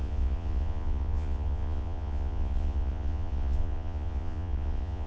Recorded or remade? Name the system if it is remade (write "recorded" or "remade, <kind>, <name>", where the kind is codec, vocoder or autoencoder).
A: remade, vocoder, Vocos